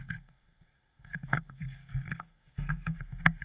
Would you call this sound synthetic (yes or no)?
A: yes